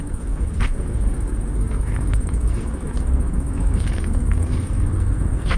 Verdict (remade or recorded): remade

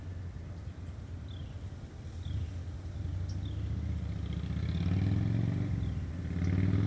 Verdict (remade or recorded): recorded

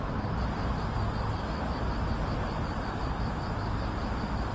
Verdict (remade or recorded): recorded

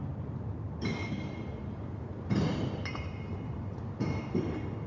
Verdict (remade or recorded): recorded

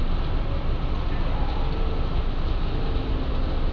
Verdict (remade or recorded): recorded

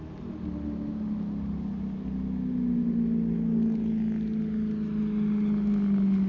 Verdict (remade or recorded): recorded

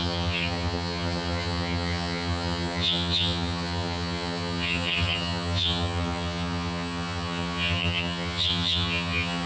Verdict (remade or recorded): remade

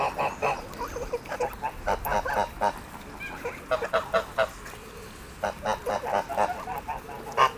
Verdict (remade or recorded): recorded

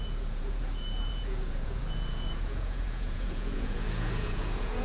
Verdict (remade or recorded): remade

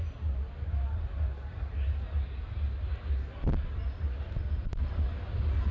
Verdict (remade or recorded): recorded